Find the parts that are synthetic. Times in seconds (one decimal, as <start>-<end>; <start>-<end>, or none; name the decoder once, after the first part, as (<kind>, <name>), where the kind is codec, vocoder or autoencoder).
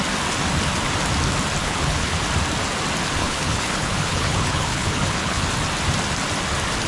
1.6-2.2 (codec, HILCodec); 3.2-5.5